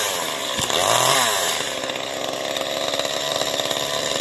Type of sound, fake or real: real